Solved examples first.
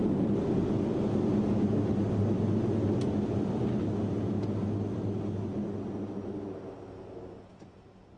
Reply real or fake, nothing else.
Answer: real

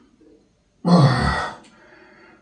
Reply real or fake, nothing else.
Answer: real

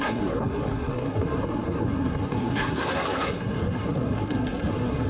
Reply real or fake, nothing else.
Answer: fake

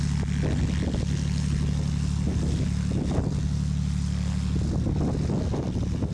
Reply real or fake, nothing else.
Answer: real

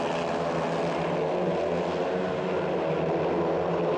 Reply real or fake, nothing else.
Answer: real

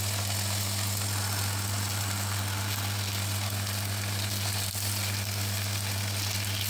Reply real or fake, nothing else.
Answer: real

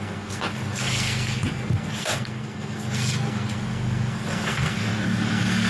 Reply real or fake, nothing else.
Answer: fake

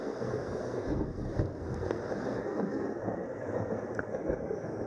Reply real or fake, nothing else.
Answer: fake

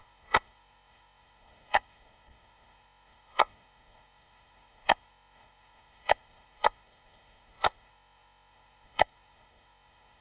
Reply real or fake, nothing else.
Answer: fake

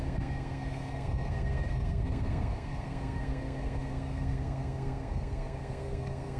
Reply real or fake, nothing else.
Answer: fake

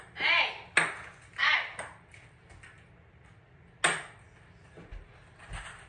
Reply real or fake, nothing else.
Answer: real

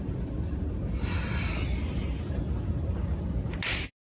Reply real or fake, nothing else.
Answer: real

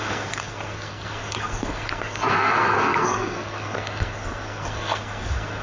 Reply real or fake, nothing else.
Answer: fake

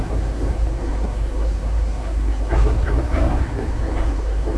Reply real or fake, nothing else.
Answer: fake